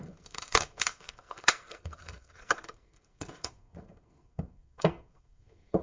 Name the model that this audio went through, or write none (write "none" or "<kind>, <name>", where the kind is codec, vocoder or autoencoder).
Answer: codec, SNAC